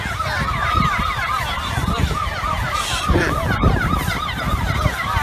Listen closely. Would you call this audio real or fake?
fake